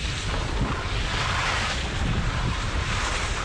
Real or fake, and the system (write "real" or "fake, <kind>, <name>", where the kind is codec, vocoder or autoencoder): real